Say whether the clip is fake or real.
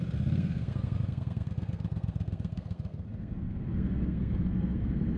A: fake